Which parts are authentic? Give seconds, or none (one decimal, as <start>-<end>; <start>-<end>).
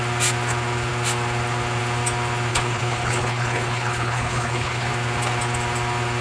0.0-2.5; 4.9-6.2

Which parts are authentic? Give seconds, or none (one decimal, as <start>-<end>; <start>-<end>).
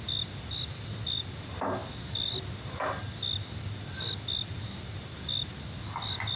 0.0-6.4